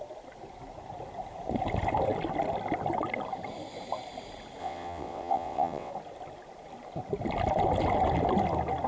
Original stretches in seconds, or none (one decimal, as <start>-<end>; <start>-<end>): 0.0-4.6; 5.9-8.9

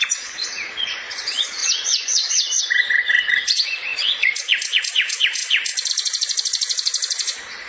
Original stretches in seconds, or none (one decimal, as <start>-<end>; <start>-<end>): none

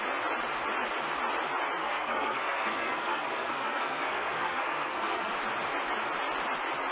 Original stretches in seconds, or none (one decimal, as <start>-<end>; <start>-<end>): 0.0-1.8; 5.3-6.9

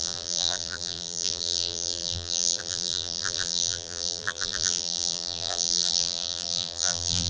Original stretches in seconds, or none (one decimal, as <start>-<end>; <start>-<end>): none

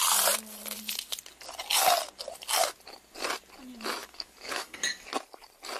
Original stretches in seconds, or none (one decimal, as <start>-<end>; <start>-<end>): 0.0-4.0; 5.1-5.8

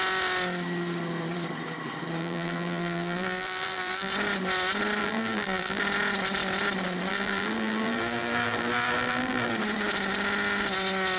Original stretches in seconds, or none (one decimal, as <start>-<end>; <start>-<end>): 0.0-2.2; 4.1-5.0; 5.8-7.1; 9.5-11.2